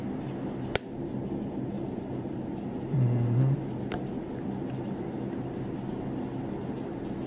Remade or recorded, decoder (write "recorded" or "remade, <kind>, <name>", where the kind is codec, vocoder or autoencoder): recorded